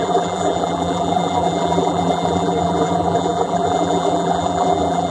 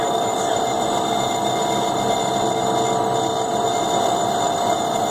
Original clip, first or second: second